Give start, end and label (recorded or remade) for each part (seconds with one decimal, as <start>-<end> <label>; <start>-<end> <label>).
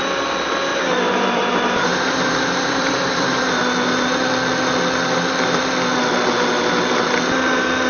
0.0-0.7 recorded; 0.7-3.6 remade; 3.6-7.9 recorded